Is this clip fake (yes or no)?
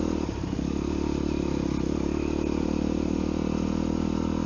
no